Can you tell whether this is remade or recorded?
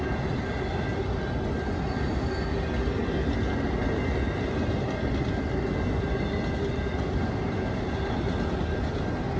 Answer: recorded